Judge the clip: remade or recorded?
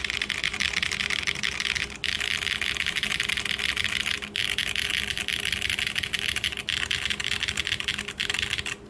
recorded